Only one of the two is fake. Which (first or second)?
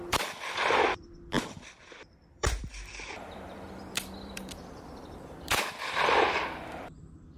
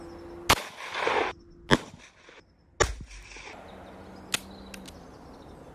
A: first